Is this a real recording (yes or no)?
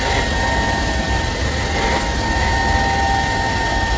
yes